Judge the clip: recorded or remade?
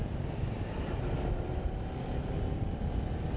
recorded